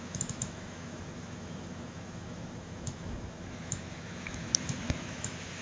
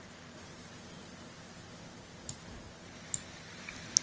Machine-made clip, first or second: first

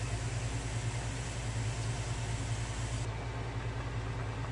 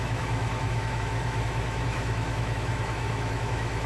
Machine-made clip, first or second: second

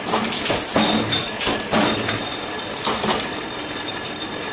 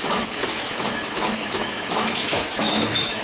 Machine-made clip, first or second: second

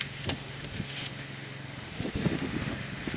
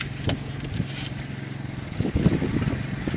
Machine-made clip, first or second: first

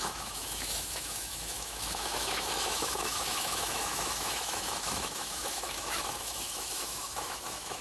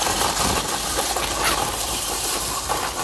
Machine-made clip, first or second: first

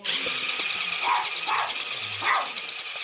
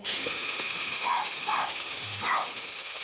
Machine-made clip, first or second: second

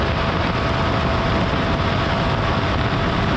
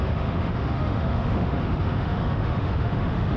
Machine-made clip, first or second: second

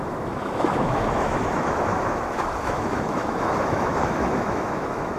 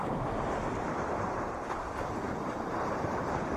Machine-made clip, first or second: first